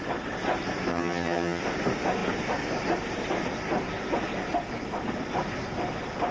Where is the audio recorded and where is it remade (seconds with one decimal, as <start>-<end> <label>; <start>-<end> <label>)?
0.0-0.9 recorded; 0.9-1.6 remade; 1.6-6.3 recorded